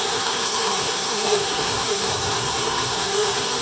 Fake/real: fake